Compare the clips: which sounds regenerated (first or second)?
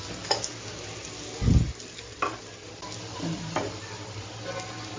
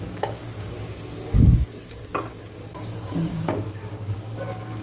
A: second